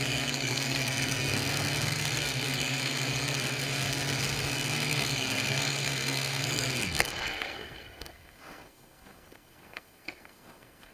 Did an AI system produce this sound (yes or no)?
yes